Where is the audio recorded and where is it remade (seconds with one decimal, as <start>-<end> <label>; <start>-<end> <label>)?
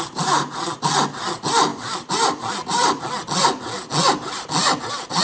0.0-5.2 recorded